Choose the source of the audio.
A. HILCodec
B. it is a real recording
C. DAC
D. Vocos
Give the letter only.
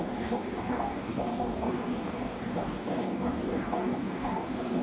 C